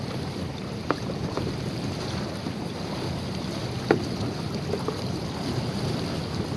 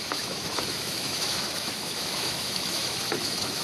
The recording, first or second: first